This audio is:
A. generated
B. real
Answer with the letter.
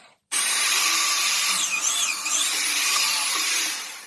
A